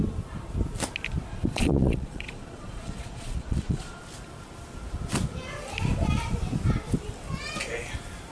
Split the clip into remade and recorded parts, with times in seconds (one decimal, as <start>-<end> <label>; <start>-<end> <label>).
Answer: 0.0-1.3 recorded; 1.3-4.0 remade; 4.0-8.3 recorded

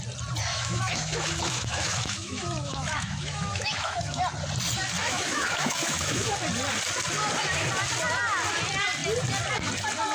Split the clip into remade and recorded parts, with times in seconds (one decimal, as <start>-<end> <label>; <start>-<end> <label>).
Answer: 0.0-0.5 recorded; 0.5-4.2 remade; 4.2-5.0 recorded; 5.0-6.3 remade; 6.3-10.1 recorded